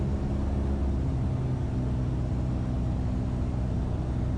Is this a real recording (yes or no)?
yes